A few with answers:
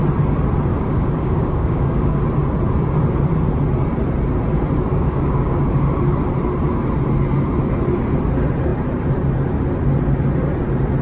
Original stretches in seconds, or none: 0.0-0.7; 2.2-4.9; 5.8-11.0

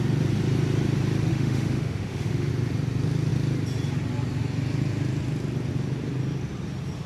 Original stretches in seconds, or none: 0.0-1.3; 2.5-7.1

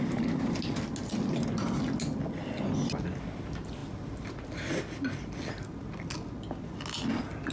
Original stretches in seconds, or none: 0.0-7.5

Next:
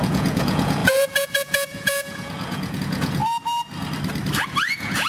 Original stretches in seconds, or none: 3.2-4.4